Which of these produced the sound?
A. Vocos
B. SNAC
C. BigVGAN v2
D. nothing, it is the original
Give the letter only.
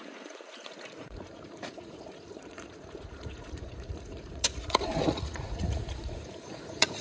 A